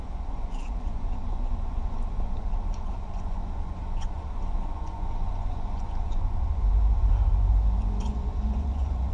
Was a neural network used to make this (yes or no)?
yes